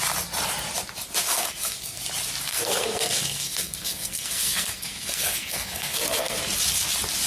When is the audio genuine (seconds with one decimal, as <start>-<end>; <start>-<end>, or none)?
0.0-1.3; 2.0-2.5; 6.4-7.3

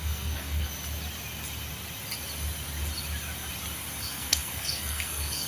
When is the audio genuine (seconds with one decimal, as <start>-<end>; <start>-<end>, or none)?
0.7-4.0

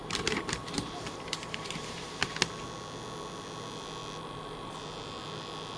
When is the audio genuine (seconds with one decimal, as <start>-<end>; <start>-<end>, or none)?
2.3-5.8